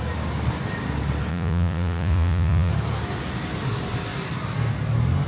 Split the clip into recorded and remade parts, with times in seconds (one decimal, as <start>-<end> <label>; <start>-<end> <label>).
0.0-1.3 recorded; 1.3-2.7 remade; 2.7-5.3 recorded